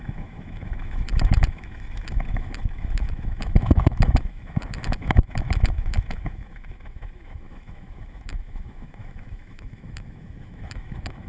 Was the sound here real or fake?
fake